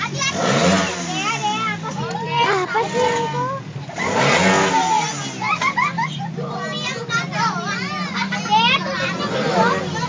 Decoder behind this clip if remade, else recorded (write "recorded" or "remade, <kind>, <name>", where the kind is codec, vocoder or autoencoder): recorded